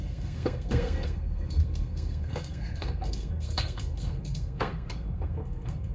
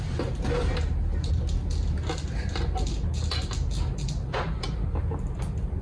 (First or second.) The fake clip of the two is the first